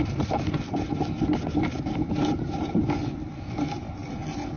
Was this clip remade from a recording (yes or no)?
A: no